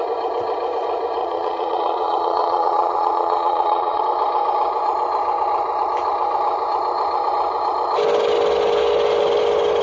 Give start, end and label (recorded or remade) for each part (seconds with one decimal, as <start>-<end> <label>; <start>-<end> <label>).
0.0-1.2 recorded; 1.2-4.0 remade; 4.0-9.8 recorded